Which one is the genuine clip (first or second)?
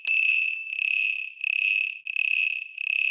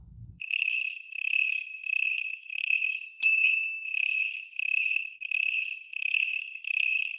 first